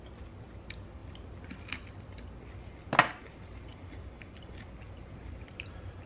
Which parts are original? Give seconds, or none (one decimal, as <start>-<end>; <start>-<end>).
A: 0.0-3.7; 4.6-6.1